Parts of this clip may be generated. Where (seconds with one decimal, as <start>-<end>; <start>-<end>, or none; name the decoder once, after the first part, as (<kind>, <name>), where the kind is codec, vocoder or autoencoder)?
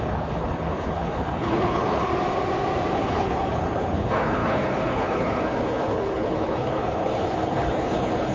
0.0-2.1 (codec, HILCodec); 2.9-8.3